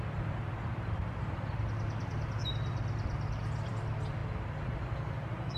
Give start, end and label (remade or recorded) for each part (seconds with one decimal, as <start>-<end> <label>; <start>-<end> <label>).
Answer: 0.0-5.6 recorded